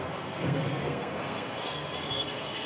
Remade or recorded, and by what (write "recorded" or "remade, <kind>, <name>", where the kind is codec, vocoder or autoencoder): remade, codec, SNAC